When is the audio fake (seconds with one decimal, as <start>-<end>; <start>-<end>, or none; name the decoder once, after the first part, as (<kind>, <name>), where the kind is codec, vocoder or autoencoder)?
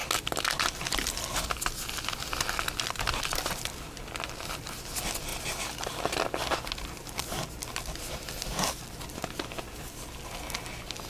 none